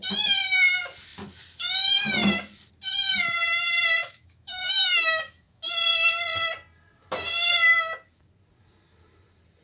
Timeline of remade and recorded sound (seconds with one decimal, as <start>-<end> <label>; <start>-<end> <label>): 0.0-4.0 recorded; 4.0-5.7 remade; 5.7-9.6 recorded